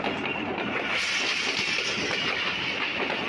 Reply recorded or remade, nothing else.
recorded